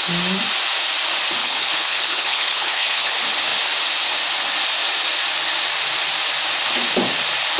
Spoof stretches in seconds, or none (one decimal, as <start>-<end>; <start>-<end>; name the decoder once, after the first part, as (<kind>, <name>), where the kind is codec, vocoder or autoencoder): 1.4-3.1 (codec, HILCodec)